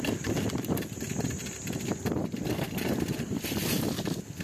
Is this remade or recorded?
recorded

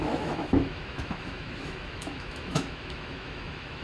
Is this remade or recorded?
remade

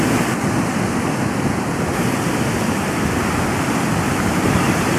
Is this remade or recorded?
recorded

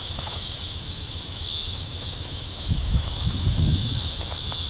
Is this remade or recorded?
remade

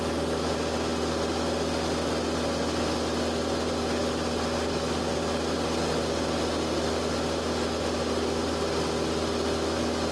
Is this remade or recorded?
recorded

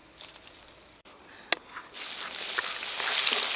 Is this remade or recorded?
recorded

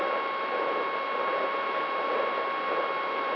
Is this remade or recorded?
recorded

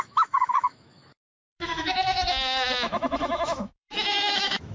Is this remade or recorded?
remade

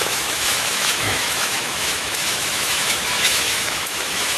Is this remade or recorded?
remade